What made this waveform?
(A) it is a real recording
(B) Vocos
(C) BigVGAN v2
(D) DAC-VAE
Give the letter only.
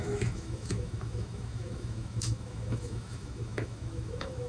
D